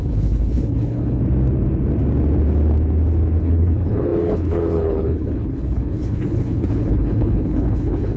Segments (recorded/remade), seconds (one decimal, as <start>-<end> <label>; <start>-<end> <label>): 0.0-1.2 remade; 1.2-3.4 recorded; 3.4-8.2 remade